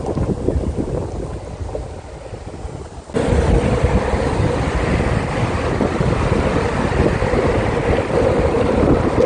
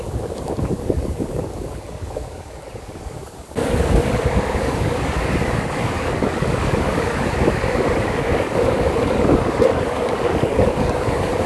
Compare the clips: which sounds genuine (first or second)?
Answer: first